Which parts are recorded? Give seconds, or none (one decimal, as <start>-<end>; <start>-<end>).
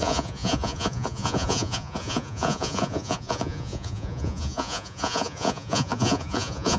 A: none